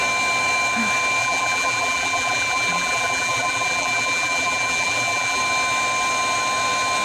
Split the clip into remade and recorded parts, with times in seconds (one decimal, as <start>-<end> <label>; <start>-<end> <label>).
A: 0.0-1.2 recorded; 1.2-5.4 remade; 5.4-7.0 recorded